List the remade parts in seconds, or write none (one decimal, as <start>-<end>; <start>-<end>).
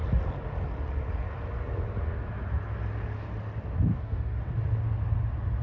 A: 3.9-4.4